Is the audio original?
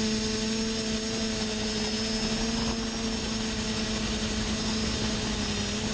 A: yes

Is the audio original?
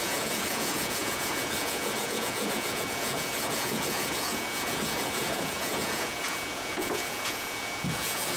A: no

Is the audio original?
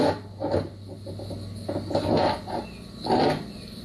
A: yes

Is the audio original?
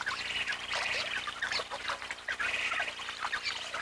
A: yes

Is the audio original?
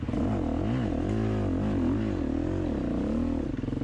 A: yes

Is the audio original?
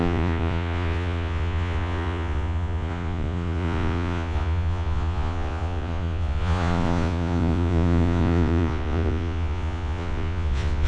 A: no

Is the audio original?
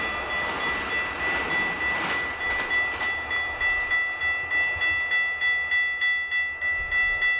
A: yes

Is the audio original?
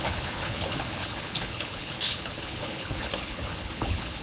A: no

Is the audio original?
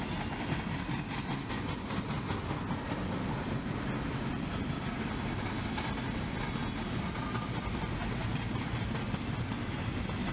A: yes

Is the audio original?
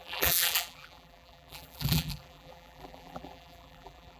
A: no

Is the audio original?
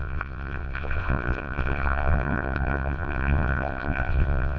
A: no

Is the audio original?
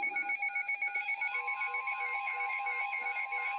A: no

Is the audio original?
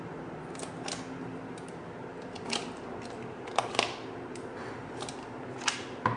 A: yes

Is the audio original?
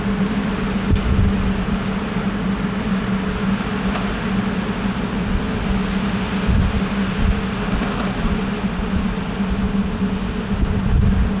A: yes